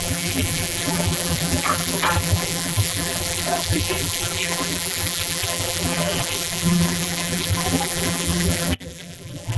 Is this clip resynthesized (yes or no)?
yes